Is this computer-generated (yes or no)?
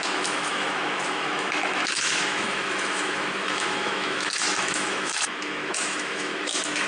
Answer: yes